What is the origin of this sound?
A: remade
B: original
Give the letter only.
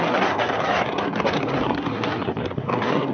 A